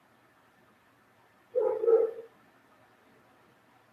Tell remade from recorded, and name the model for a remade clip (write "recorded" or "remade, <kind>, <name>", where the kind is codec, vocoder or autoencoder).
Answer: remade, vocoder, BigVGAN v2